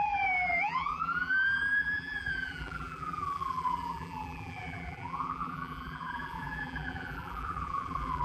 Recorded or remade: remade